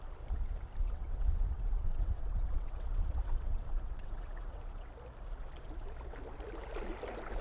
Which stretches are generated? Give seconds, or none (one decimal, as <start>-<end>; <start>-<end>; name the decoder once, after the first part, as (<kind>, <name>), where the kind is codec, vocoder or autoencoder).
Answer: 0.8-4.9 (vocoder, WaveNeXt)